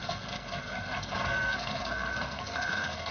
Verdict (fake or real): fake